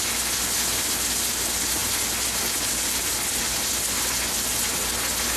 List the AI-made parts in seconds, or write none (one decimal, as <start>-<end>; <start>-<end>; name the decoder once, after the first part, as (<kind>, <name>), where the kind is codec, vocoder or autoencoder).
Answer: none